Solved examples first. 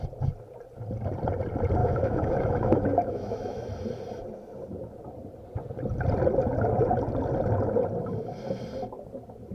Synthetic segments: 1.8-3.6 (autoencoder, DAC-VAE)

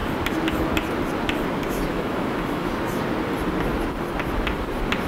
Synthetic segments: 1.9-2.7 (autoencoder, DAC-VAE)

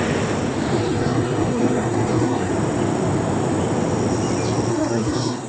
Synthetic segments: 0.8-2.5 (codec, SNAC); 4.7-5.5

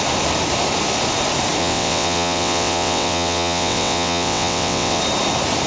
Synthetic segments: 1.6-5.0 (vocoder, WaveNeXt)

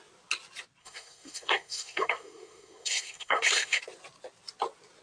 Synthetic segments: 0.8-3.8 (codec, SNAC)

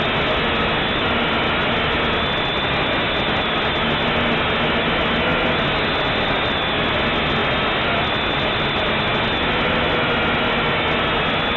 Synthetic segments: none